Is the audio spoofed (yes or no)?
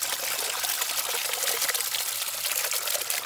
no